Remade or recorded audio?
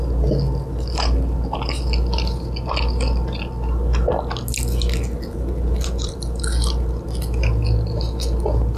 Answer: recorded